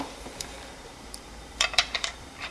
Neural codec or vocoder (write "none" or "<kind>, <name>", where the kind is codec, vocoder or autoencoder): vocoder, BigVGAN v2